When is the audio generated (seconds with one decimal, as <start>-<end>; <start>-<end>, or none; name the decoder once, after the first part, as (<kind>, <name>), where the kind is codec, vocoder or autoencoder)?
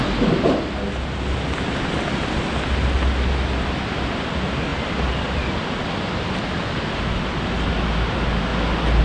none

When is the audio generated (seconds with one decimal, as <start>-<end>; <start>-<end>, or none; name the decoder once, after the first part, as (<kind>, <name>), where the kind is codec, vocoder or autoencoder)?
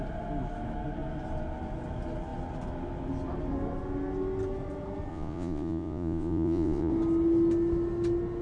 5.1-6.9 (vocoder, Vocos)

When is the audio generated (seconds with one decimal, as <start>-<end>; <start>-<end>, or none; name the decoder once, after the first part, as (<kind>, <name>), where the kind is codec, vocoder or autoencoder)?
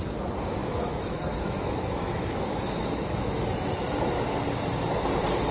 0.6-3.4 (autoencoder, DAC-VAE)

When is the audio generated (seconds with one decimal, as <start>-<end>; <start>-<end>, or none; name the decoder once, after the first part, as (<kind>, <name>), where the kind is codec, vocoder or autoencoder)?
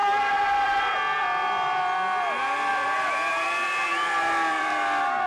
0.0-0.9 (vocoder, BigVGAN v2); 2.7-5.3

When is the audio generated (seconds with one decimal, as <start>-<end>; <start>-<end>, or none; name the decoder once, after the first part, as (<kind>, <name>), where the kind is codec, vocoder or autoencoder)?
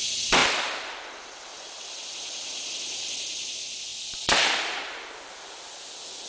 none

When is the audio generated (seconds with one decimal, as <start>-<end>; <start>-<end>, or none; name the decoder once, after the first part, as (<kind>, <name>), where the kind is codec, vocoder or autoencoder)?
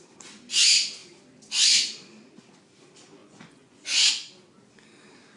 3.2-4.1 (vocoder, Vocos)